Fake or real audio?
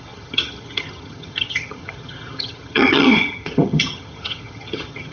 fake